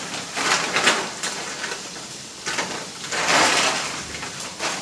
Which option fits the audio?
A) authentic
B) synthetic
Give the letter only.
A